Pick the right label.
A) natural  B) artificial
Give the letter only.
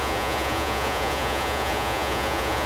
B